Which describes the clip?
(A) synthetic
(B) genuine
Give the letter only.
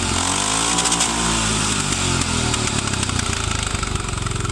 B